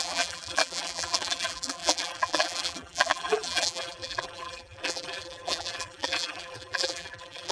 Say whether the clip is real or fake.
fake